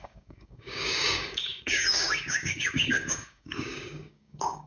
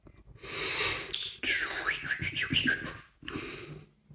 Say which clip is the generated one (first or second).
first